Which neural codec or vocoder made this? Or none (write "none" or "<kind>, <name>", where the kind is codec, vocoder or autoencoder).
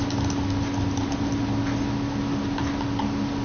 none